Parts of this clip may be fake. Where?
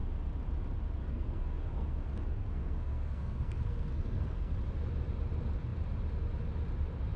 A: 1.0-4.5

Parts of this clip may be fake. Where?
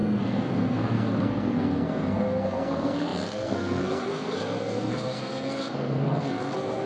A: 0.0-6.9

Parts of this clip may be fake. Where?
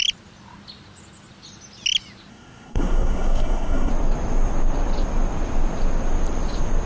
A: 2.3-3.9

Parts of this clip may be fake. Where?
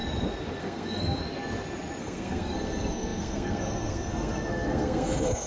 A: 0.6-1.2; 2.0-5.5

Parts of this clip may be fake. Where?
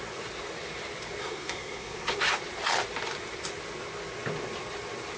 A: 1.2-2.2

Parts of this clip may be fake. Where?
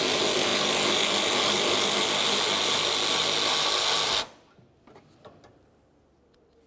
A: none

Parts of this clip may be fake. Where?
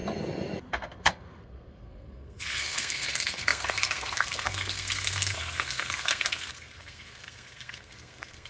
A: 0.7-8.5